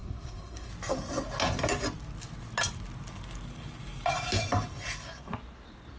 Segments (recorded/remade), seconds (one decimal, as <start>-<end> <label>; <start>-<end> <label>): 0.0-0.7 remade; 0.7-6.0 recorded